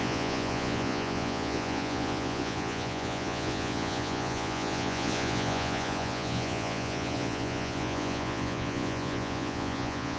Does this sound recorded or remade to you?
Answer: remade